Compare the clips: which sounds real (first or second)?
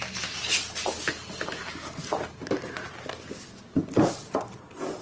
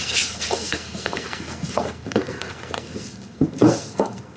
first